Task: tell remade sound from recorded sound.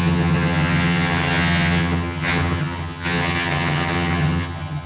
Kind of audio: remade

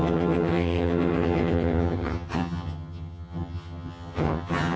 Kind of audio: remade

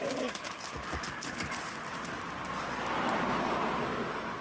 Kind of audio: recorded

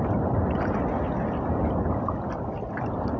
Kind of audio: recorded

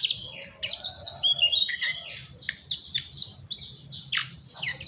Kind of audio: recorded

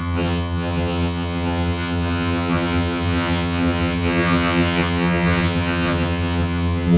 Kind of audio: remade